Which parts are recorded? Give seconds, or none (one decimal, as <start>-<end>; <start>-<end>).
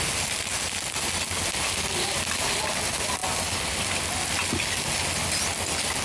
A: 0.0-6.0